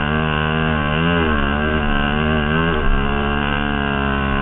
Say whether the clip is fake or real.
real